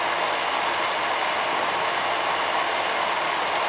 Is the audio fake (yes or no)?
no